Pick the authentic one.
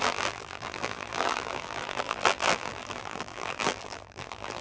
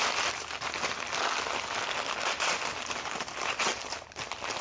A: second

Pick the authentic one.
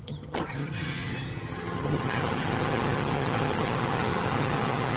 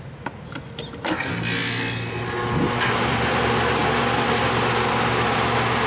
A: second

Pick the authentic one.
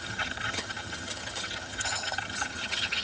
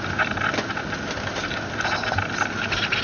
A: second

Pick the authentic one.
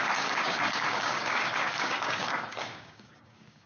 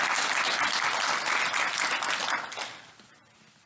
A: second